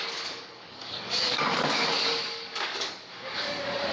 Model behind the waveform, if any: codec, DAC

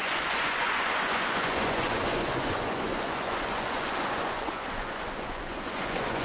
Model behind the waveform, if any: vocoder, Vocos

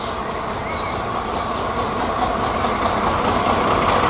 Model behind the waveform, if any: none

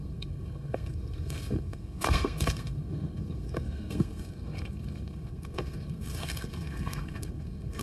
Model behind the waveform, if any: codec, SNAC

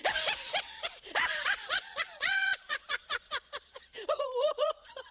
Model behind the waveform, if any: vocoder, Vocos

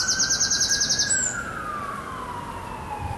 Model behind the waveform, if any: none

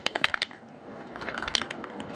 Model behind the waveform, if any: codec, DAC